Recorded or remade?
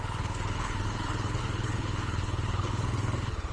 remade